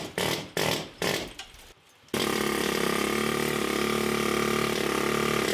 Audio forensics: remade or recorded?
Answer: recorded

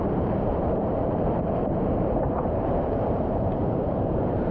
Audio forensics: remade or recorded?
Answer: remade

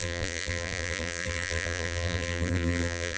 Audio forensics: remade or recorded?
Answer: remade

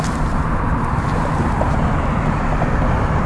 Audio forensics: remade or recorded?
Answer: remade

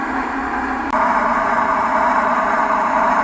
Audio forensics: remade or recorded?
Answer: remade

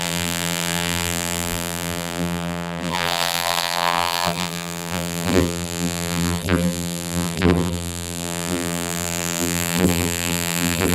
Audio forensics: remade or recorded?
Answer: remade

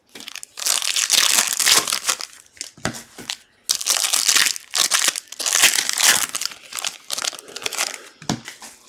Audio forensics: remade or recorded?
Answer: recorded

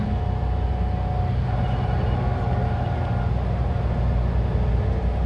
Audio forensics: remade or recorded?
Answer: recorded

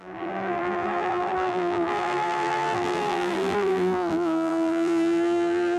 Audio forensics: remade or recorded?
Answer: remade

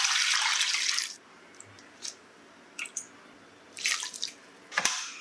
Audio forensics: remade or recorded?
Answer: recorded